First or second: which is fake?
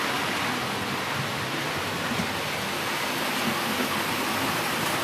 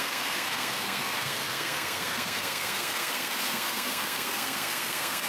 second